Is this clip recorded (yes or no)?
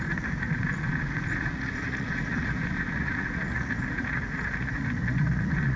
no